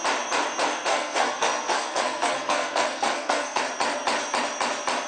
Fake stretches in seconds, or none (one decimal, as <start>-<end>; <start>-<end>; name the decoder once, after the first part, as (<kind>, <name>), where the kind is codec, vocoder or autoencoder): 0.9-3.6 (codec, SNAC)